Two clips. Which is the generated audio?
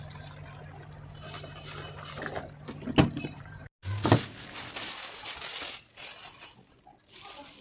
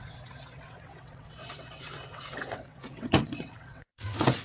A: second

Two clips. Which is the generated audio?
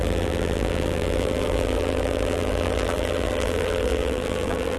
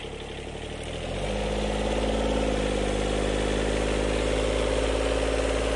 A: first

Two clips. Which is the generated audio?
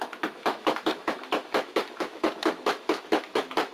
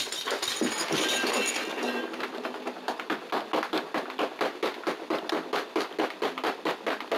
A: first